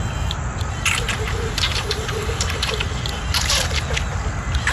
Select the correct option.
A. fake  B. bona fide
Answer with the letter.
B